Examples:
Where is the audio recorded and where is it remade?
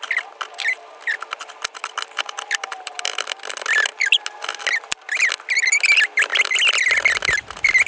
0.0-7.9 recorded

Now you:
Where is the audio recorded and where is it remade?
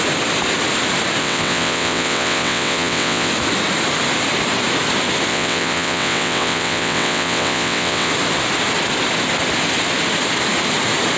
0.0-1.2 recorded; 1.2-3.3 remade; 3.3-5.3 recorded; 5.3-8.1 remade; 8.1-11.2 recorded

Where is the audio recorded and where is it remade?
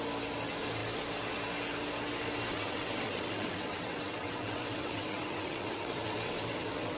0.0-2.5 recorded; 2.5-7.0 remade